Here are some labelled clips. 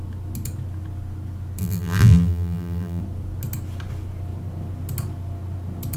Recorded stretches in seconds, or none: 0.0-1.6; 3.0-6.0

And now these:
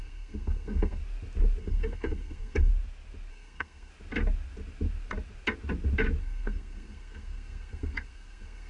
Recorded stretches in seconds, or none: 1.0-1.6; 2.7-3.3; 3.9-6.2

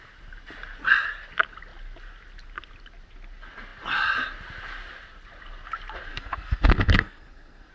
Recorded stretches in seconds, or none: 0.0-6.1

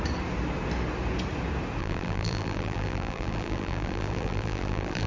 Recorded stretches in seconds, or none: 0.0-1.8

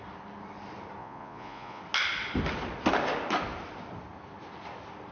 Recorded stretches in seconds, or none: 0.0-1.0; 1.8-5.1

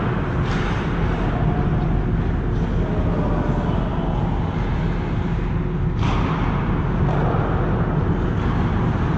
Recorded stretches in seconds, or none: 0.0-9.2